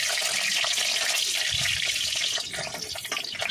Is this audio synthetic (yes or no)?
no